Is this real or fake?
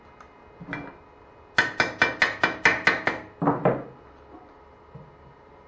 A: real